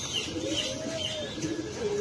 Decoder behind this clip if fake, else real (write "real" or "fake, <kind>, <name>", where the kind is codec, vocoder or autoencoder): real